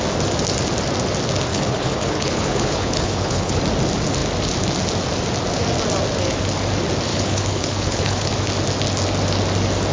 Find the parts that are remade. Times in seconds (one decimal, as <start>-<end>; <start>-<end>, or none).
1.5-3.6; 7.1-8.3